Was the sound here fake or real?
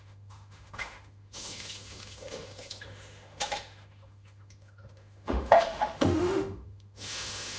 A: fake